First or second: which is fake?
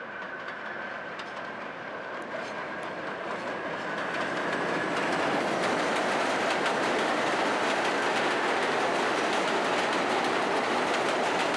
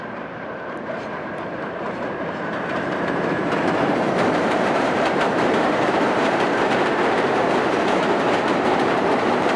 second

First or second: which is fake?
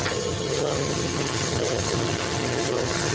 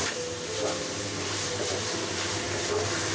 first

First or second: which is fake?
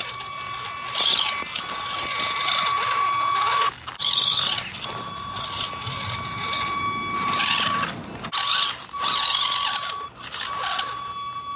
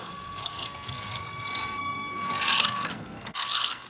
second